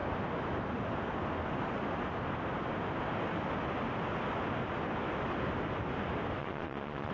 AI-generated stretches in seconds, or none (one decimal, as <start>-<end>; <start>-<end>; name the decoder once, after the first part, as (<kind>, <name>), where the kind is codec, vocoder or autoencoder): 6.4-7.1 (vocoder, Vocos)